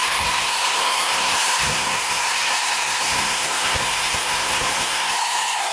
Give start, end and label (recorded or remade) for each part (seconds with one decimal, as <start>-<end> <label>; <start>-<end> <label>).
0.0-5.7 remade